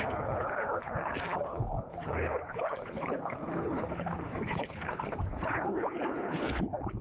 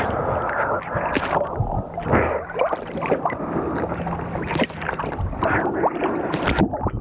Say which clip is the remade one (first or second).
first